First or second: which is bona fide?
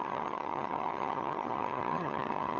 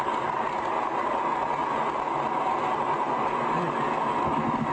second